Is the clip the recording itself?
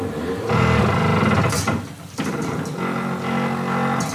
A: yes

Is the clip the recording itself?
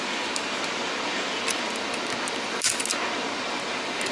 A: yes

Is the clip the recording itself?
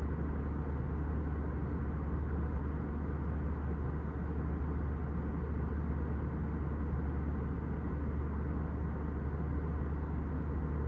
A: yes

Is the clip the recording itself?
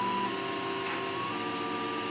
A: yes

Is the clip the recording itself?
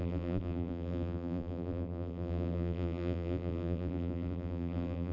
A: no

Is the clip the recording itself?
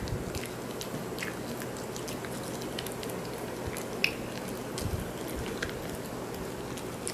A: yes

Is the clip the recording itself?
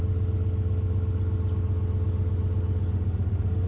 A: yes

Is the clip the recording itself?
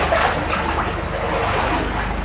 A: yes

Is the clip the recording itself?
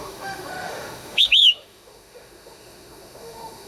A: no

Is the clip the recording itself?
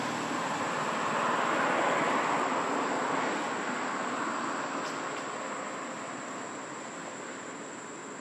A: yes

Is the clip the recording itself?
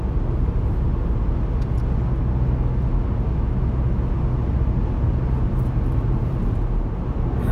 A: yes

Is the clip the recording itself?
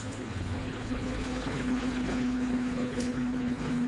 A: no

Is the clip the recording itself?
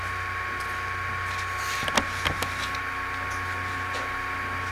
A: yes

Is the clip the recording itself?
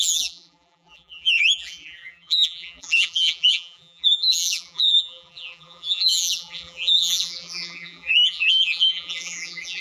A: no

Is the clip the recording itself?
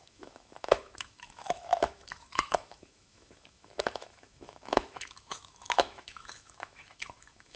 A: no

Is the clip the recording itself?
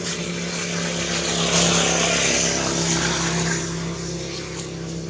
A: yes